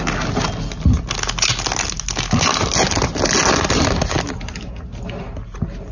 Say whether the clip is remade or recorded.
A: recorded